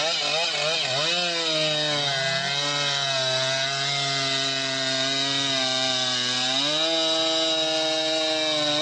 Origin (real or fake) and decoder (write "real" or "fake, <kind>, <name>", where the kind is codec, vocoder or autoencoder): real